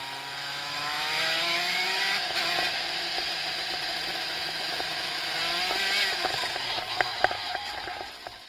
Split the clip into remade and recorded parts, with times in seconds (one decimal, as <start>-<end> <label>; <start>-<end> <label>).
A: 0.0-0.5 recorded; 0.5-2.6 remade; 2.6-4.1 recorded; 4.1-5.4 remade; 5.4-8.5 recorded